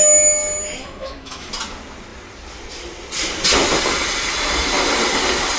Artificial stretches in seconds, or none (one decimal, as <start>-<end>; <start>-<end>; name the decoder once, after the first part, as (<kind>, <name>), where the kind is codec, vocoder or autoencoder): 0.8-1.5 (autoencoder, DAC-VAE)